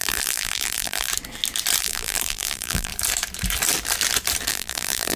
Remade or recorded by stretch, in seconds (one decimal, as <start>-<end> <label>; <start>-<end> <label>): 0.0-1.1 remade; 1.1-1.8 recorded; 1.8-2.9 remade; 2.9-4.5 recorded; 4.5-5.2 remade